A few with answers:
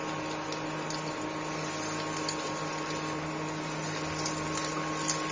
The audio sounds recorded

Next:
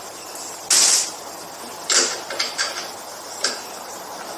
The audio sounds recorded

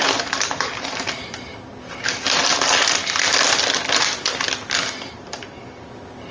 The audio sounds recorded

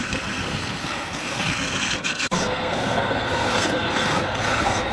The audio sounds remade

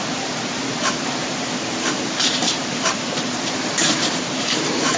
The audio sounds remade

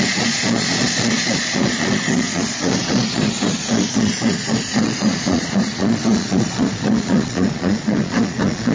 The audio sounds remade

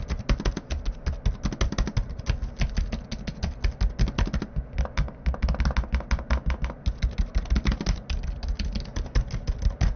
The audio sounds recorded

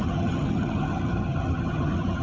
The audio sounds remade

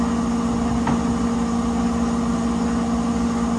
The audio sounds recorded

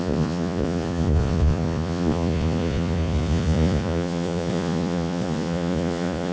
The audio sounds remade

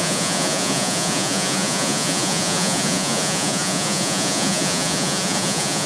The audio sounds remade